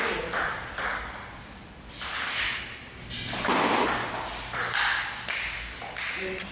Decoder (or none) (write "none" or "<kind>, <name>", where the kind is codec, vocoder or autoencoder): none